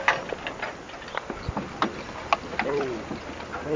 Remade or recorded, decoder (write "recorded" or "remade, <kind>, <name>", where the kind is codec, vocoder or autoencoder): recorded